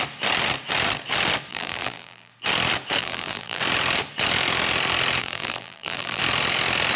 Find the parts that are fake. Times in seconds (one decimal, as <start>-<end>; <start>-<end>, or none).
1.5-2.3; 3.0-3.6; 5.2-6.2